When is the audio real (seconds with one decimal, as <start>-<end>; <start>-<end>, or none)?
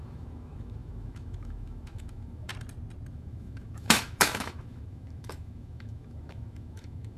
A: 2.5-3.1